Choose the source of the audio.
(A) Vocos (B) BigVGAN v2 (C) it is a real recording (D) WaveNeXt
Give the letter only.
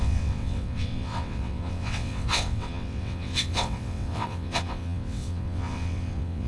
D